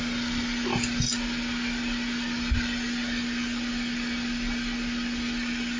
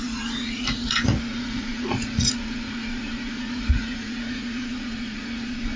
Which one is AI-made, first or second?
second